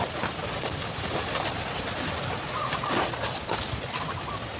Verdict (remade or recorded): recorded